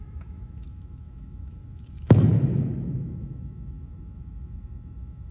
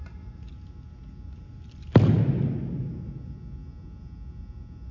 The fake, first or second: first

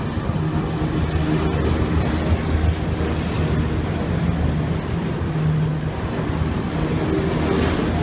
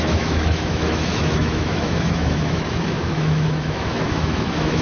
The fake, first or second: second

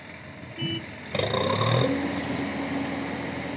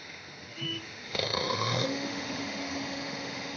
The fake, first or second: second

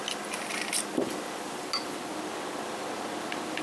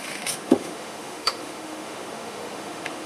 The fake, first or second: second